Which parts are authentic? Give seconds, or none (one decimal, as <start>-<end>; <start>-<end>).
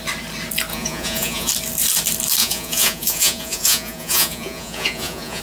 0.0-0.7; 1.5-2.4